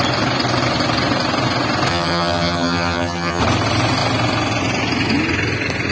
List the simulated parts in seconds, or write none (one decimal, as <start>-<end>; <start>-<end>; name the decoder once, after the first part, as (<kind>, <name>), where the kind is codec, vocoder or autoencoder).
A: 1.9-3.4 (vocoder, HiFi-GAN)